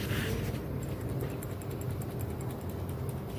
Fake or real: real